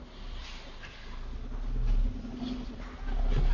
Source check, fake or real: real